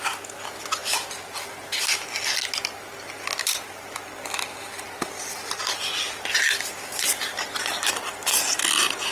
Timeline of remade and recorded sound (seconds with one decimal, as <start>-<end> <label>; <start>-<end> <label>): 0.0-9.1 recorded